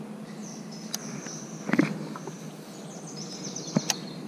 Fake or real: real